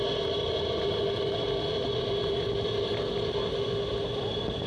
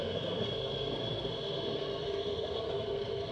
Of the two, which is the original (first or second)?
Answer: first